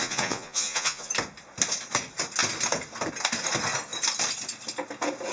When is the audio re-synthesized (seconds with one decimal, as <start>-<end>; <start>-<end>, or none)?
0.0-1.1